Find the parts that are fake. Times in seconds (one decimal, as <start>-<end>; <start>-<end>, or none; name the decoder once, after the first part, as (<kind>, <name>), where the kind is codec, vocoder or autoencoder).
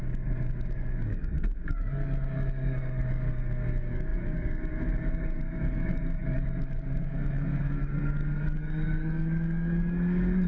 0.0-10.5 (codec, DAC)